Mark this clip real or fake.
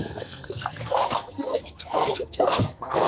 fake